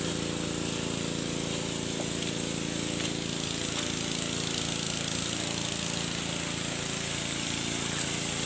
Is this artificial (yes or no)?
no